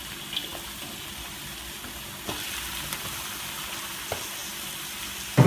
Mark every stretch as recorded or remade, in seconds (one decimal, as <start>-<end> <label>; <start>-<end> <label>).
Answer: 0.0-5.5 recorded